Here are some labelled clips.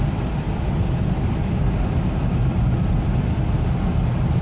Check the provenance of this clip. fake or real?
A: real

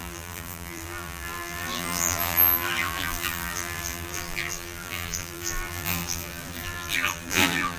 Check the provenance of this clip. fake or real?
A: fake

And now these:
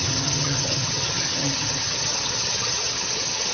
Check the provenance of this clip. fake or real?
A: fake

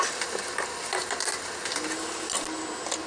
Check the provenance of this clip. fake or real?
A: real